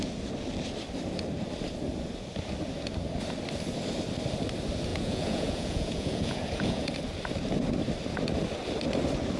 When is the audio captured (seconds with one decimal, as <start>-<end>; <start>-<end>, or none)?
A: 0.0-4.9; 6.9-9.4